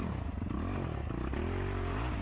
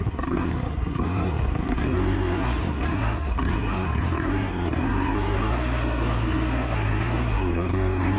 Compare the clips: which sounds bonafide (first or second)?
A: first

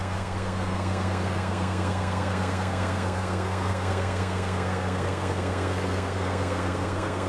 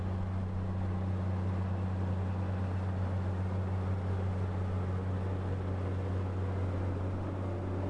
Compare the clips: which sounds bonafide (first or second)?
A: second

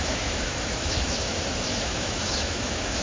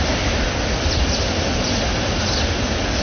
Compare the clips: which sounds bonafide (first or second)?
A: second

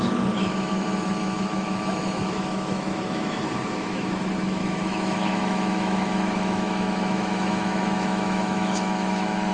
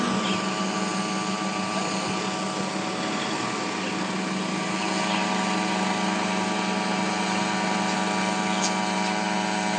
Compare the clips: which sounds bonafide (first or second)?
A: second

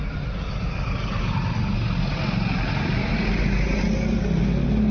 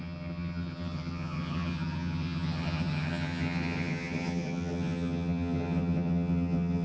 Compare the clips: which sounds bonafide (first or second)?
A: first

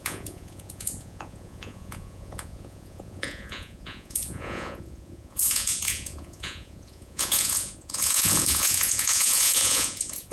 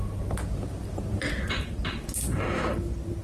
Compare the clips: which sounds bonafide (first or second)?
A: second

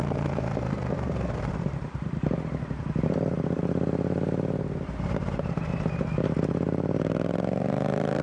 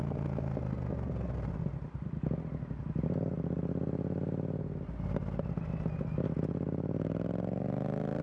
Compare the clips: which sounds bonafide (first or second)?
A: second